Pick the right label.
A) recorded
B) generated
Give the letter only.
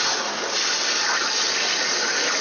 A